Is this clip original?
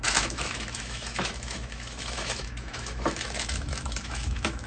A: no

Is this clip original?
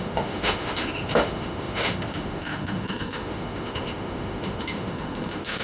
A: no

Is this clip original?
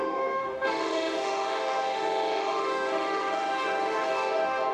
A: no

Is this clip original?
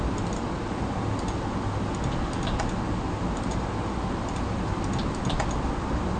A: yes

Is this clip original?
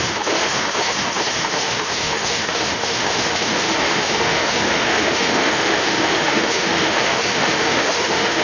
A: no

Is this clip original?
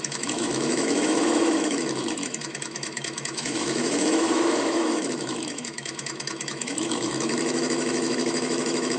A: no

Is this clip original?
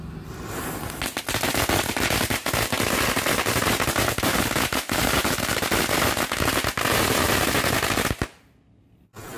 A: yes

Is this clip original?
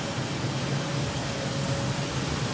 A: yes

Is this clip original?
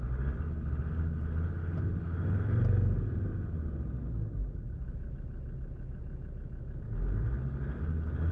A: yes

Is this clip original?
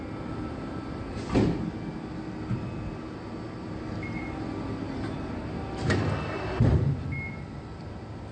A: yes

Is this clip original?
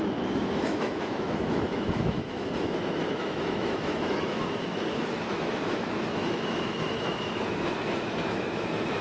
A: no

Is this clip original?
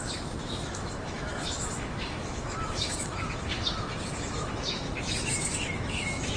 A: no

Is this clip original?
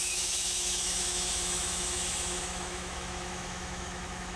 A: no